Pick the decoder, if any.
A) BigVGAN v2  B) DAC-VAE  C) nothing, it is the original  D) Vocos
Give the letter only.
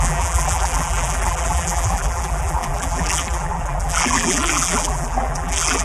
A